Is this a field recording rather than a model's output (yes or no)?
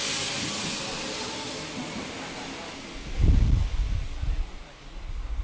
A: yes